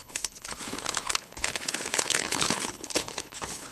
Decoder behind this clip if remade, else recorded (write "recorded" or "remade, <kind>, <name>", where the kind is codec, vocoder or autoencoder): remade, codec, HILCodec